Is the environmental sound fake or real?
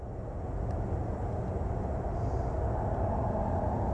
real